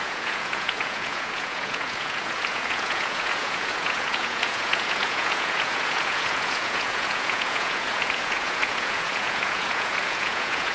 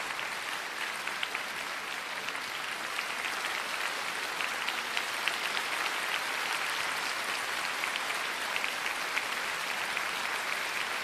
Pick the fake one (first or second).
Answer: first